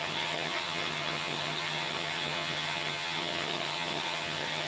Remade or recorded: remade